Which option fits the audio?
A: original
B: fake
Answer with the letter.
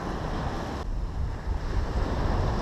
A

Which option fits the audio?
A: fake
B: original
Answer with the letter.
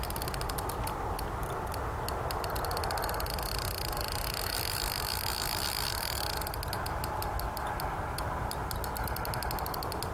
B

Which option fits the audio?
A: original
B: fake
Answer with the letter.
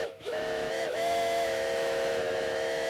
B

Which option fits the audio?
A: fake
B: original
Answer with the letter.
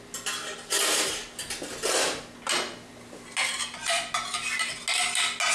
B